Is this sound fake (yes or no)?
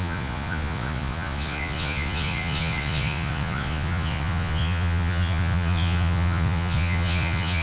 yes